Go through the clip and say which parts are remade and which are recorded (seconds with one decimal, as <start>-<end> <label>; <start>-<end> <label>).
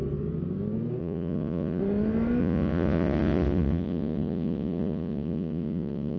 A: 0.0-1.0 recorded; 1.0-1.8 remade; 1.8-2.4 recorded; 2.4-6.2 remade